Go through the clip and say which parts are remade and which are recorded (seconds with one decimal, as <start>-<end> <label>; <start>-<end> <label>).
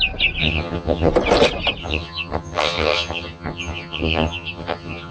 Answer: 0.0-0.4 recorded; 0.4-1.1 remade; 1.1-1.8 recorded; 1.8-5.1 remade